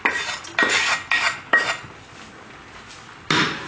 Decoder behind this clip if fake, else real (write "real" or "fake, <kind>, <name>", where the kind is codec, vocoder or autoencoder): real